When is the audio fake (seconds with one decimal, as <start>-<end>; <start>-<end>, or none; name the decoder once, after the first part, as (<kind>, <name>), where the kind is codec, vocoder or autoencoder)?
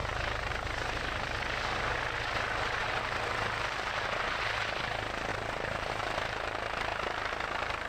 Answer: 0.0-0.5 (vocoder, BigVGAN v2); 5.3-5.9